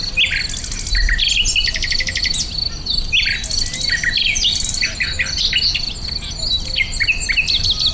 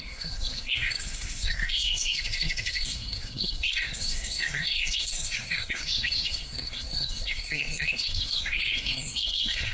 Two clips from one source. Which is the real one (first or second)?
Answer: first